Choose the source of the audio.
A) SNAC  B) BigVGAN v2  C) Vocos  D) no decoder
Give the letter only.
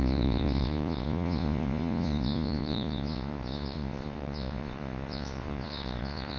C